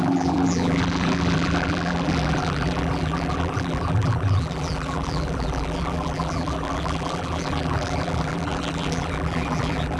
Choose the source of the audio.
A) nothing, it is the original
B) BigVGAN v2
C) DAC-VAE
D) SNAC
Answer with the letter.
B